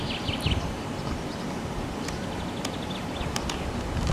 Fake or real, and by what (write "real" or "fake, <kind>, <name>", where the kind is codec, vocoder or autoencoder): real